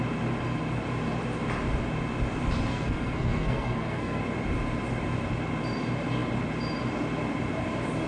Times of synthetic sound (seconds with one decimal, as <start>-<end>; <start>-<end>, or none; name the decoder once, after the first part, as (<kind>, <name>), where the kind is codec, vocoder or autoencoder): 2.7-4.2 (codec, SNAC)